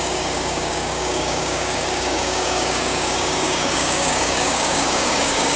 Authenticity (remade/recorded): remade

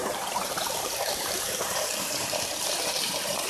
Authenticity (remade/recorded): remade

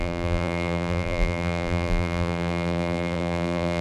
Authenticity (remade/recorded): remade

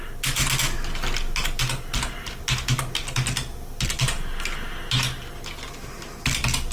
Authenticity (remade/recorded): recorded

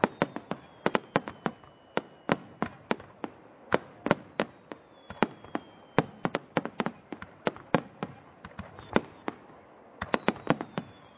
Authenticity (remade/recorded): recorded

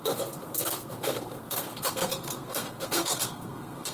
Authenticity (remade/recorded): remade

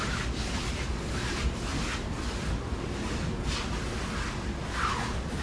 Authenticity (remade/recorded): recorded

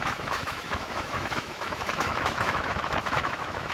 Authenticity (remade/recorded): remade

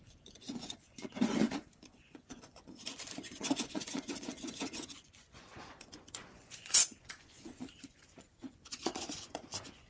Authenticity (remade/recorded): remade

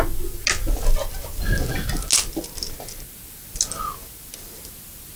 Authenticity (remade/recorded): recorded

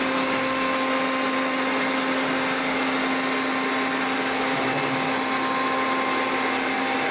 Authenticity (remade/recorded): recorded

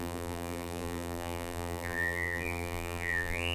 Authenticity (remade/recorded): remade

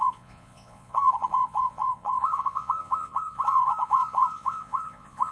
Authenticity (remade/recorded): remade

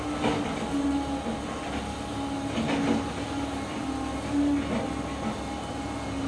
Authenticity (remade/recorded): recorded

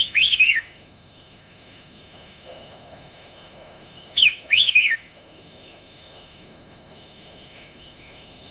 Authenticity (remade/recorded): remade